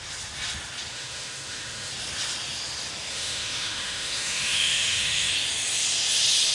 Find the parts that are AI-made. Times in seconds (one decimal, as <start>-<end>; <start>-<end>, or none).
0.9-1.9; 3.1-5.3